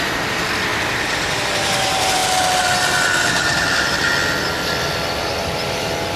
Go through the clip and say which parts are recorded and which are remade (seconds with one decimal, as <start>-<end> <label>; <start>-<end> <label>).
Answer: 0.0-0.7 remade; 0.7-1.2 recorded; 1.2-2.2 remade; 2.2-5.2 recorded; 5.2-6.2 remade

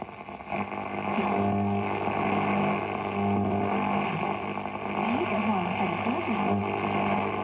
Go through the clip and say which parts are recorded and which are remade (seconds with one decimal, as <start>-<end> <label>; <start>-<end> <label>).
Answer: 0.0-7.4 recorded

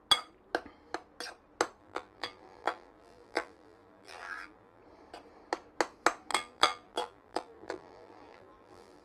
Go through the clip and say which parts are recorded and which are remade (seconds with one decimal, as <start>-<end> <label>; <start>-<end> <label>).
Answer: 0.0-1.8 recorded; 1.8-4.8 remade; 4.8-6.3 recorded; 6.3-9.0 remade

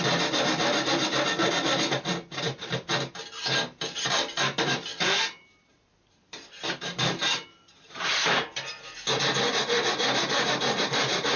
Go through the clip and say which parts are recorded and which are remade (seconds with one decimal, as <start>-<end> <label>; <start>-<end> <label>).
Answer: 0.0-4.9 recorded; 4.9-8.8 remade; 8.8-11.4 recorded